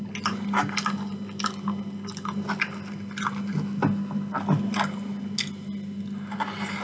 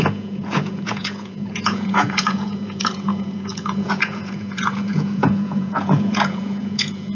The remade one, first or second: second